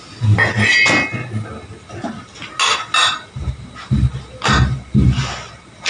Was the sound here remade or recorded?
recorded